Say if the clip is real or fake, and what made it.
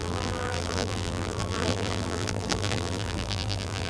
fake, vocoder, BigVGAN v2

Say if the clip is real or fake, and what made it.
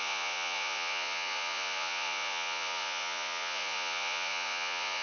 fake, vocoder, Vocos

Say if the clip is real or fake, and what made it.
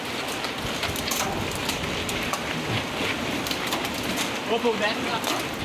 real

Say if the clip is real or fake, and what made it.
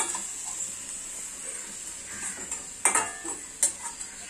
real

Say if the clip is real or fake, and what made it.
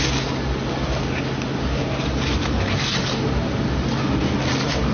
real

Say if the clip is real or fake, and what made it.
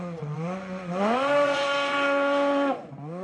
fake, vocoder, Vocos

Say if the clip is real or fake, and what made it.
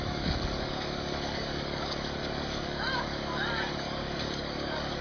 fake, codec, DAC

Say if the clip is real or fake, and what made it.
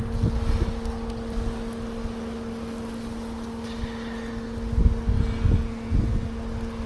real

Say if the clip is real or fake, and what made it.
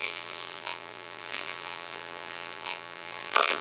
fake, vocoder, BigVGAN v2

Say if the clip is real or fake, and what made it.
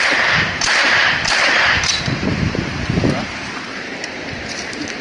fake, vocoder, BigVGAN v2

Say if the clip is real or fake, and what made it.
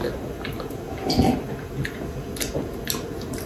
real